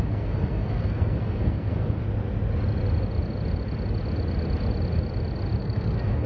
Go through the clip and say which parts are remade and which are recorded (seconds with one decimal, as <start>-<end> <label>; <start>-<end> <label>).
0.0-2.0 remade; 2.0-5.6 recorded; 5.6-6.3 remade